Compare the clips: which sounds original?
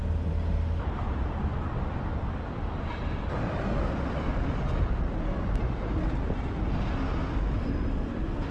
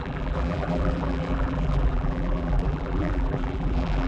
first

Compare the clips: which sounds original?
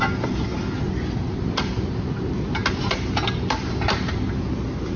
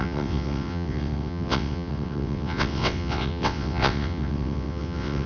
first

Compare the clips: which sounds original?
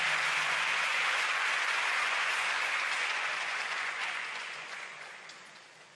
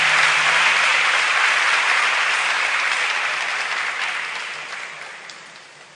second